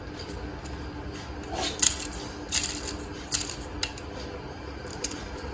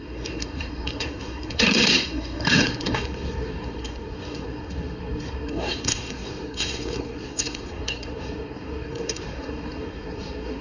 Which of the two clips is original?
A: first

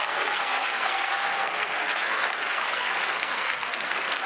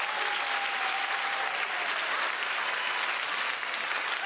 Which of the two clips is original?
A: second